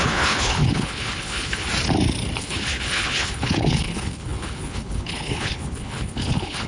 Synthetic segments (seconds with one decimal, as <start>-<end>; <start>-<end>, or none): 0.0-1.7; 2.4-6.7